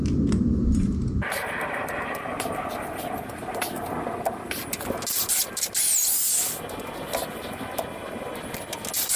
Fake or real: real